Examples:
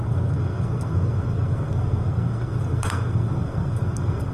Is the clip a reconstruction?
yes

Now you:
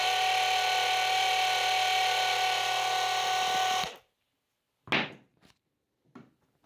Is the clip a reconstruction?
no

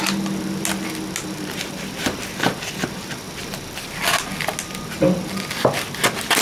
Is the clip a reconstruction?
no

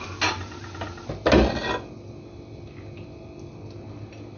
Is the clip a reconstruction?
no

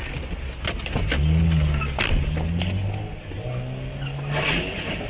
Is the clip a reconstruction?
no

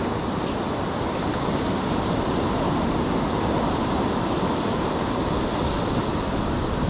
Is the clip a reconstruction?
no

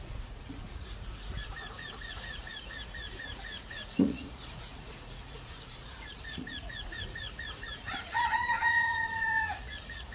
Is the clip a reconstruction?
yes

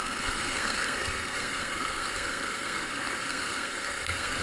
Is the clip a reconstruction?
yes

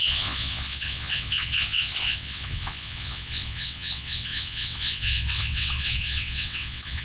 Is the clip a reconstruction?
yes